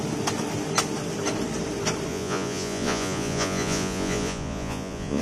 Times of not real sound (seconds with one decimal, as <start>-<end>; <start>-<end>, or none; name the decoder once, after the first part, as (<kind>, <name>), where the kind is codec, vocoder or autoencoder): 2.1-5.2 (vocoder, Vocos)